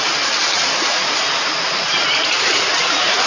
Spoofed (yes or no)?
no